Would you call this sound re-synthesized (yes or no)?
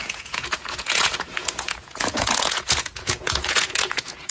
yes